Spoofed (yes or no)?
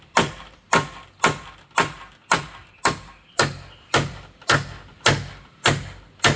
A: no